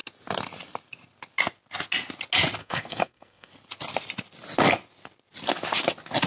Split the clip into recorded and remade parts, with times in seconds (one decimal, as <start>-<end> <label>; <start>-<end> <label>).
0.0-2.6 recorded; 2.6-3.5 remade; 3.5-6.3 recorded